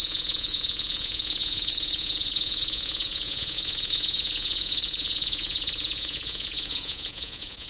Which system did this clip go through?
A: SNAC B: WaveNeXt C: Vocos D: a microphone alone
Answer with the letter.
C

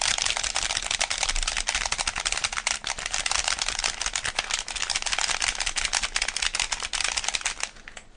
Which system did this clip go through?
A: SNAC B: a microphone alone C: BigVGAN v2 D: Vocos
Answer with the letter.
B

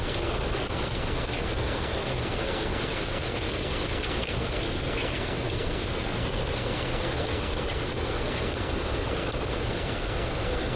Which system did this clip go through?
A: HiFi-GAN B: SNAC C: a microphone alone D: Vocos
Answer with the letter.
B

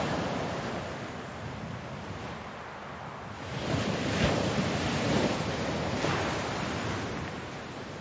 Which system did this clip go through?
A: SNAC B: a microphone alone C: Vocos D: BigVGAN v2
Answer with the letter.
B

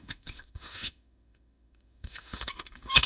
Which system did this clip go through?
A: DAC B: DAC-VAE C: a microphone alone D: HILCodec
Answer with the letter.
B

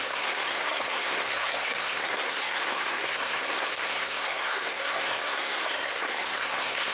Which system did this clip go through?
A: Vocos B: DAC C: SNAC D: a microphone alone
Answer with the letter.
C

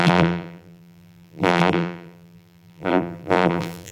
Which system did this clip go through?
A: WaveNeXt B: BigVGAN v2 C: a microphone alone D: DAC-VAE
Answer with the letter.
B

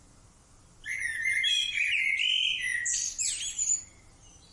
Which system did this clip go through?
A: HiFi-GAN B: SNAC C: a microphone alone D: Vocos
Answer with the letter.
C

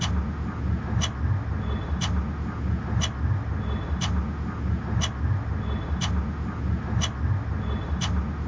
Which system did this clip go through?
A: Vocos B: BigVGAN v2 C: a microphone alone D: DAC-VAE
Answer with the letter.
C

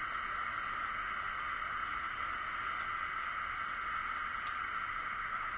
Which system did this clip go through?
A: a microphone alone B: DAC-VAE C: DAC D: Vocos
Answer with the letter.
A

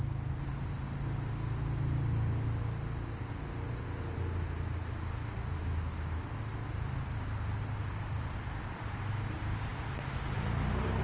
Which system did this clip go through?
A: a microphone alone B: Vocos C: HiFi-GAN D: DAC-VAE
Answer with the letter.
A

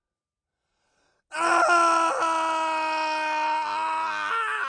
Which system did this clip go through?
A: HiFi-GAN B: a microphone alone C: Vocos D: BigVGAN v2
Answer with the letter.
B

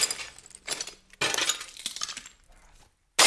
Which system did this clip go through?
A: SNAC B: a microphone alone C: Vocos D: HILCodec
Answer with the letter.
B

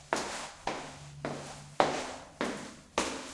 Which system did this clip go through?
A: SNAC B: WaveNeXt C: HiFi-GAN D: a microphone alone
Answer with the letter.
D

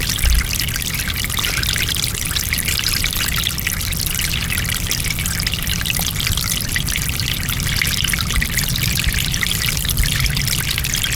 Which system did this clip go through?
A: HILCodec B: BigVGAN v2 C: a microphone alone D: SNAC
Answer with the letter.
B